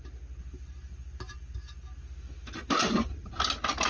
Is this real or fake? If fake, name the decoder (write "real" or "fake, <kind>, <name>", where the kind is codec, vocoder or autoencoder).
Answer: real